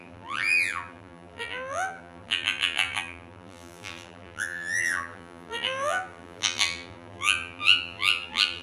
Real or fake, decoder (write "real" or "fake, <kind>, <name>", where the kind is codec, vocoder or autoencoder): fake, vocoder, BigVGAN v2